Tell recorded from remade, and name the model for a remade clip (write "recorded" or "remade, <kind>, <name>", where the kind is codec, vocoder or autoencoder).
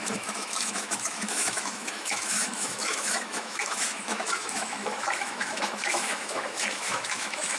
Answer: remade, autoencoder, DAC-VAE